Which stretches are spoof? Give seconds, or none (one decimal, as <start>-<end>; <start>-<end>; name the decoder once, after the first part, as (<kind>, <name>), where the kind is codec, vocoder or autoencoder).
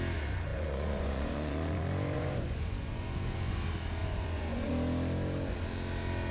0.5-3.6 (vocoder, Vocos); 4.0-4.7